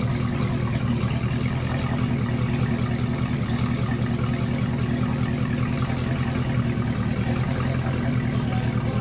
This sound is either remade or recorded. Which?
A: recorded